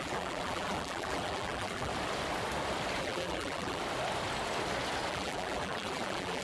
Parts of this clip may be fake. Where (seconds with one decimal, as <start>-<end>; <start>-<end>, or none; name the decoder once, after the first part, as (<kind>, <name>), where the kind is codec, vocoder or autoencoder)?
0.0-1.9 (vocoder, BigVGAN v2); 3.0-3.8; 5.1-6.4